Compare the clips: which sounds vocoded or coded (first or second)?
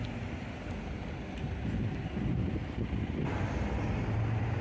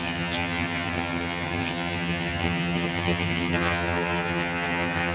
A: second